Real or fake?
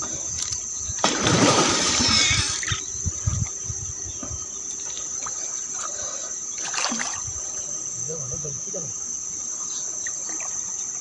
fake